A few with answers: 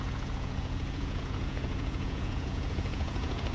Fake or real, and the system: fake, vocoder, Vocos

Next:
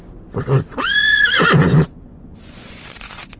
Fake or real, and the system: fake, vocoder, Vocos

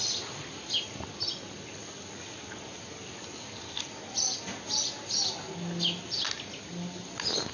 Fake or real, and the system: real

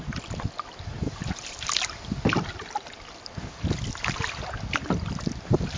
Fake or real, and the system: real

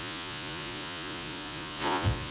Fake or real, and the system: fake, vocoder, Vocos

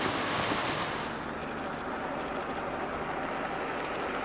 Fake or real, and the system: real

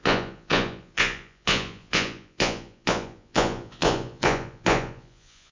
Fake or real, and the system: fake, vocoder, Vocos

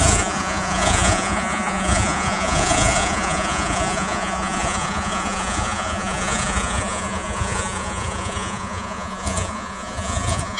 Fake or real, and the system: fake, vocoder, Vocos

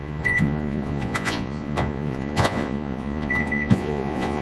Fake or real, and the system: fake, vocoder, Vocos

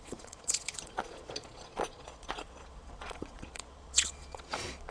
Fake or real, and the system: fake, vocoder, Vocos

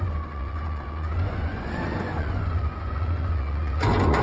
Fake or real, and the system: fake, vocoder, Vocos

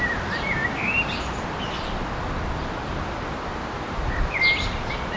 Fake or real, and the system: real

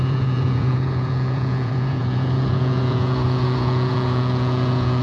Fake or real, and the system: fake, vocoder, Vocos